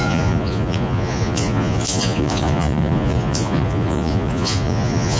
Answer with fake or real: fake